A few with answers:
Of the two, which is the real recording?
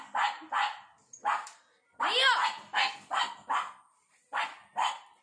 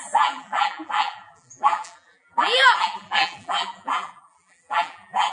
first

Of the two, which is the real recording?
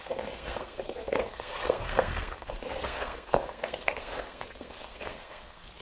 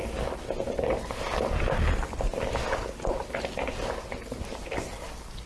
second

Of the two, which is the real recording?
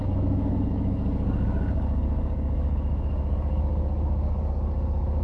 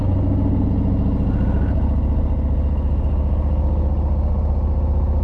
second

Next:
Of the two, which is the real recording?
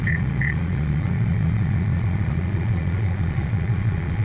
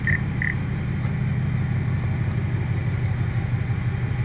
second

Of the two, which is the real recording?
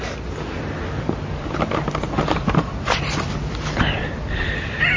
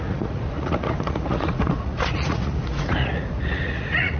first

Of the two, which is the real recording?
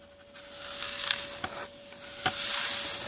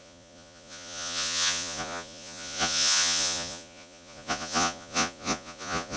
first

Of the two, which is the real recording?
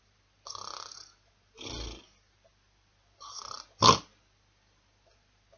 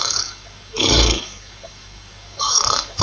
first